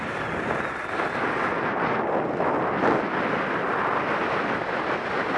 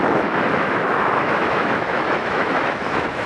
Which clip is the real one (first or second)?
first